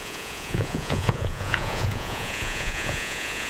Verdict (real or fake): fake